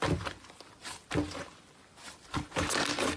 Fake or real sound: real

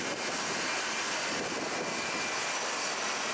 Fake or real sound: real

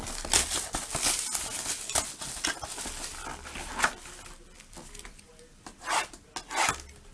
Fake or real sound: real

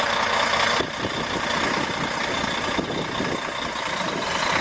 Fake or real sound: real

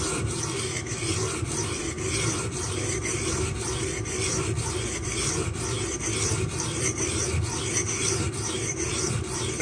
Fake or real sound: fake